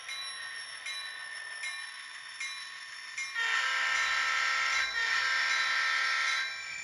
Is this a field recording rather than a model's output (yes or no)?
yes